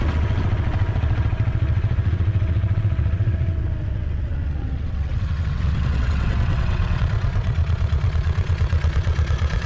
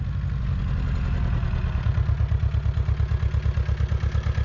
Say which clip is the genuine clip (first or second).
second